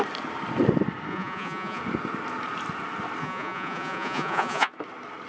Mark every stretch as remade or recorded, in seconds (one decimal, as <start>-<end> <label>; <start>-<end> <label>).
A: 0.0-1.1 recorded; 1.1-1.8 remade; 1.8-3.2 recorded; 3.2-4.7 remade; 4.7-5.3 recorded